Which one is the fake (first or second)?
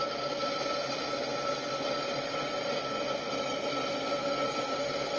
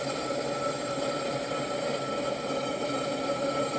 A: second